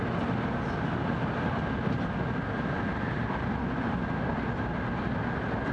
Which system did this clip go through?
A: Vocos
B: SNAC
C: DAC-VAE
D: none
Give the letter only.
D